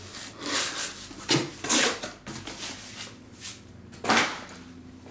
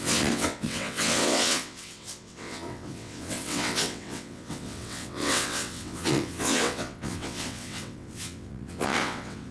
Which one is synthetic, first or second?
second